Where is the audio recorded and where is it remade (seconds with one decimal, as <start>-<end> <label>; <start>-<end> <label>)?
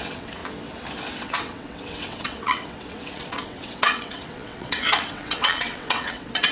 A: 0.0-0.4 remade; 0.4-1.1 recorded; 1.1-6.5 remade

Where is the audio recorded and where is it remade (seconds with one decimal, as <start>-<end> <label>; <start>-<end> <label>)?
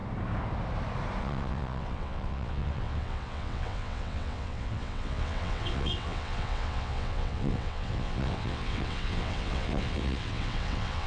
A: 0.0-1.2 recorded; 1.2-11.1 remade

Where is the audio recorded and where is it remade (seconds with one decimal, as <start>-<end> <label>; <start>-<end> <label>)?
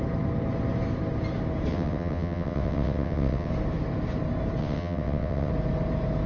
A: 0.0-1.7 recorded; 1.7-3.5 remade; 3.5-4.6 recorded; 4.6-5.5 remade; 5.5-6.3 recorded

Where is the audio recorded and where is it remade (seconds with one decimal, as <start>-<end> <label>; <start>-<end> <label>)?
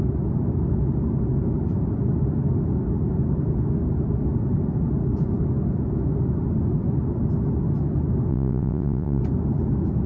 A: 0.0-8.3 recorded; 8.3-9.2 remade; 9.2-10.1 recorded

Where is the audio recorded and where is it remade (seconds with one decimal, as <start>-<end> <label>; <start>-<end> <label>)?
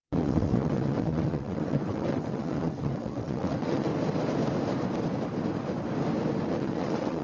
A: 0.0-3.9 remade; 3.9-6.5 recorded; 6.5-7.2 remade